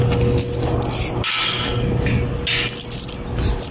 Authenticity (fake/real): real